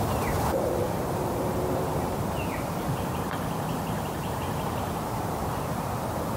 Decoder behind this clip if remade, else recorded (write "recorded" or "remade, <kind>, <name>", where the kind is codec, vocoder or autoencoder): remade, vocoder, BigVGAN v2